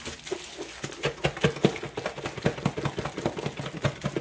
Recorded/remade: recorded